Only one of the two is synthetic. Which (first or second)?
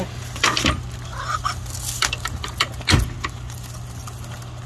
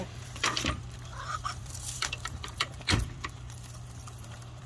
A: second